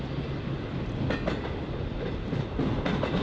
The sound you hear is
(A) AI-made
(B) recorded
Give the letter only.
B